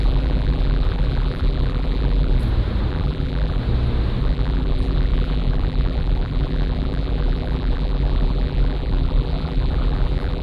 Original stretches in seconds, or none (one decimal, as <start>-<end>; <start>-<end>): 2.4-2.9; 3.6-4.2